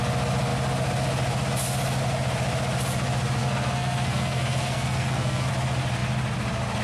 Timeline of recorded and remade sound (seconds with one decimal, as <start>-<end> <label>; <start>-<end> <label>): 0.0-3.4 recorded; 3.4-5.5 remade; 5.5-6.8 recorded